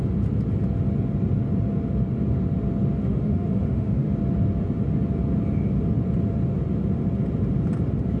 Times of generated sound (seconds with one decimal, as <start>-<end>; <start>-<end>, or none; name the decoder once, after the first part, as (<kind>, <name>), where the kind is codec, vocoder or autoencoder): 3.0-4.1 (autoencoder, DAC-VAE)